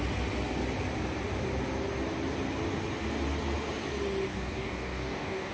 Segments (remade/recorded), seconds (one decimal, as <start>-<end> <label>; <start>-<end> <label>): 0.0-4.3 recorded; 4.3-5.5 remade